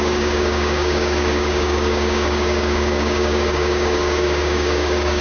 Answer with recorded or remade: remade